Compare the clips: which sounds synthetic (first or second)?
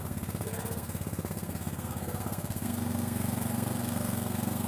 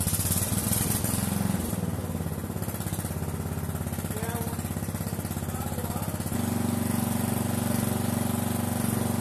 first